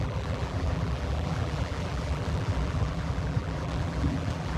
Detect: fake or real fake